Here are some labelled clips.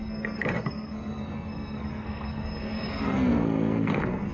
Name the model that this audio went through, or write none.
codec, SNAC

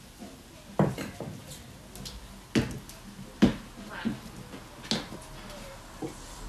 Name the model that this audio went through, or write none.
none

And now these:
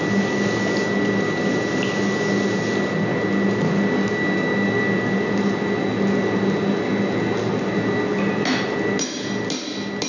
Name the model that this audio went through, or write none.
none